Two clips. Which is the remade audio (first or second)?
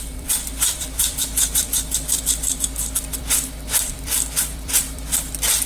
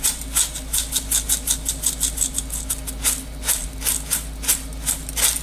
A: first